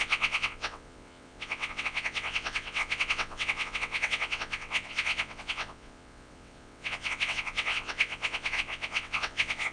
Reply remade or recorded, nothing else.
remade